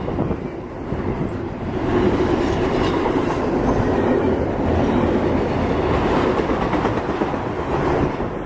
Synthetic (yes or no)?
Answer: no